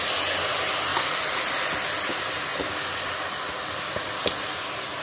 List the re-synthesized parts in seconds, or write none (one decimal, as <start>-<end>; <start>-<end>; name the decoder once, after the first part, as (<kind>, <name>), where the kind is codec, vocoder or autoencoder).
none